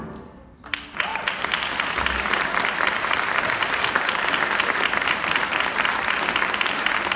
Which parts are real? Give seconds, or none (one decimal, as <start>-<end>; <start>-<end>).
0.0-7.2